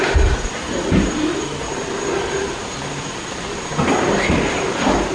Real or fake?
real